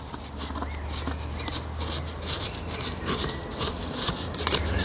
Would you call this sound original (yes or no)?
yes